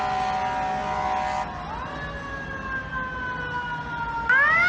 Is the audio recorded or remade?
recorded